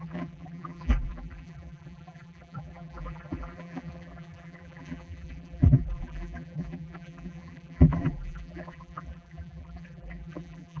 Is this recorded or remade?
remade